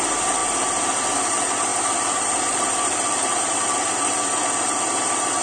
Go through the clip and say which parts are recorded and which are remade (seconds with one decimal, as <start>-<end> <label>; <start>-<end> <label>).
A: 0.0-1.7 recorded; 1.7-3.8 remade; 3.8-5.4 recorded